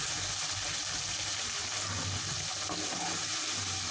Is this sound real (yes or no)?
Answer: yes